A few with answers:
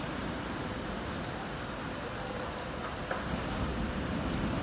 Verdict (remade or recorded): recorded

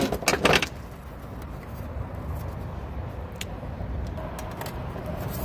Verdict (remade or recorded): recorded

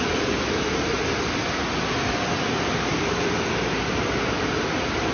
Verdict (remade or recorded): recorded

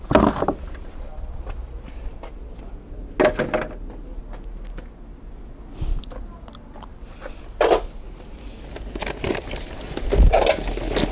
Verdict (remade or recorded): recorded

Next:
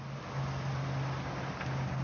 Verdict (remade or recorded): recorded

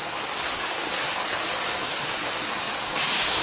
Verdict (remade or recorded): remade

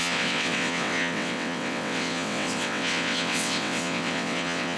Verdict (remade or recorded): remade